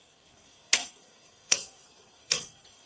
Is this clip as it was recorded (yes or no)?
no